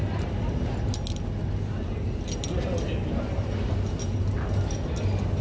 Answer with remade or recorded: recorded